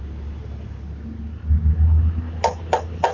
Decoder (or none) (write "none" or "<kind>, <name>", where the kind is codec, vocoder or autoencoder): none